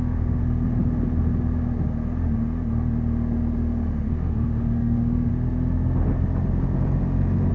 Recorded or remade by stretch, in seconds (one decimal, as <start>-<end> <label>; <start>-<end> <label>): 0.0-0.4 remade; 0.4-4.1 recorded; 4.1-5.3 remade; 5.3-7.5 recorded